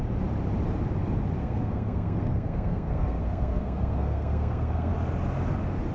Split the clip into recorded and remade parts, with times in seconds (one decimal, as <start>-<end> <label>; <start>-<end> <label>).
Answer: 0.0-1.4 recorded; 1.4-4.9 remade; 4.9-5.9 recorded